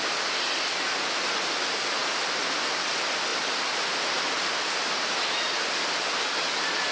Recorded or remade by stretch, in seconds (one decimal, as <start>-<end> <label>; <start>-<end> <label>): 0.0-6.9 recorded